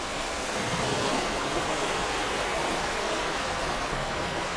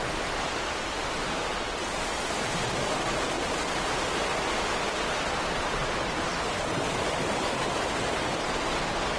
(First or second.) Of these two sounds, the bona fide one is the second